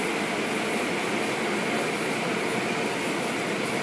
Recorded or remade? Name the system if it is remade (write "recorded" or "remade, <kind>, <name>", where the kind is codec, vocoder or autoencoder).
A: recorded